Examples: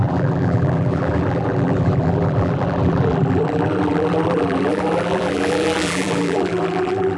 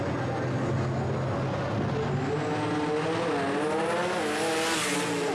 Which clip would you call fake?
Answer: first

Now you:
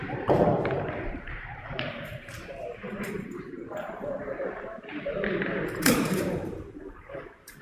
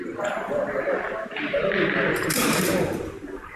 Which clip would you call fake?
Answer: first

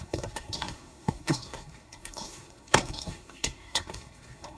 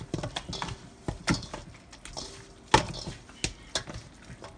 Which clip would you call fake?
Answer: first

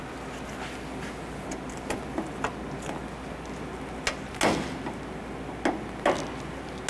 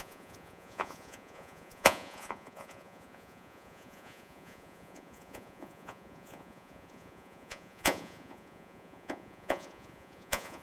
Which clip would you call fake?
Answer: second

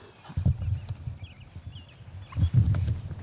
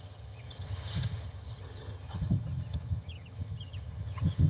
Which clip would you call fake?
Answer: second